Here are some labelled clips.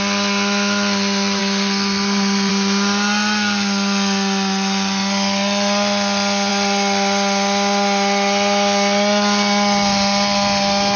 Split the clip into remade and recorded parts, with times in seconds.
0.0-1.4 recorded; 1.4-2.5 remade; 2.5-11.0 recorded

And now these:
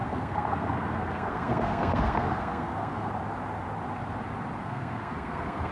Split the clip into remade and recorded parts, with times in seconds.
0.0-3.1 remade; 3.1-4.6 recorded; 4.6-5.7 remade

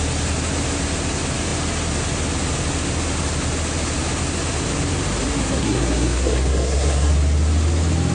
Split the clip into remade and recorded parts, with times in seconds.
0.0-5.4 recorded; 5.4-7.1 remade; 7.1-8.1 recorded